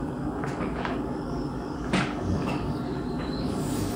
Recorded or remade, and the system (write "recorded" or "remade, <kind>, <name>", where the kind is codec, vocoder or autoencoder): remade, codec, DAC